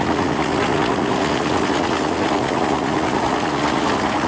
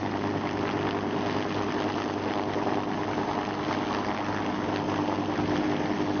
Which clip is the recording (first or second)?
second